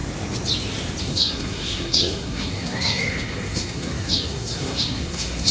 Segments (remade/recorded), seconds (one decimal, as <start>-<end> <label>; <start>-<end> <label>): 0.0-1.0 recorded; 1.0-5.5 remade